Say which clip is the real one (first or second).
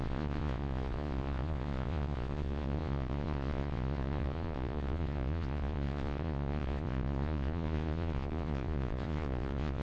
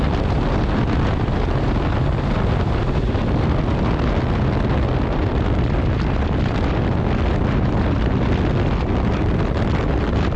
second